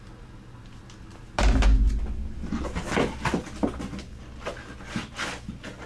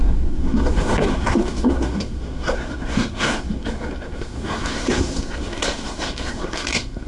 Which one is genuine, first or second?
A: first